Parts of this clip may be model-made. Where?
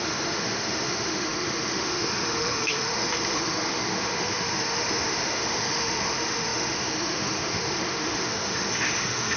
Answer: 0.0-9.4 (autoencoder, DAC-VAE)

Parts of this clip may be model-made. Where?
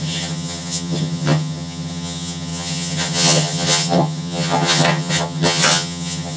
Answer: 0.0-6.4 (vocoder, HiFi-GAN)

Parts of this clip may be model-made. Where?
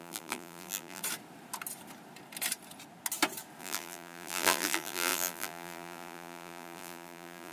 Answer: 0.0-1.0 (vocoder, BigVGAN v2); 3.6-7.5